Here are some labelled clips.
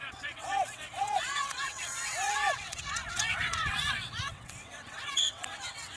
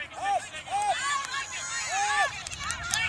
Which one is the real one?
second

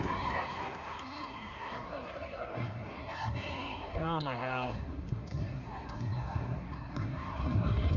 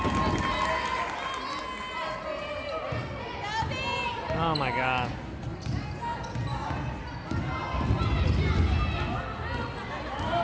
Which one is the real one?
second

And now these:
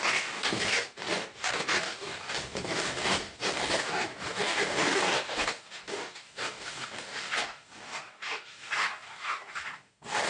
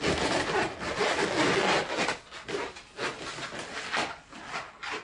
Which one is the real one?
second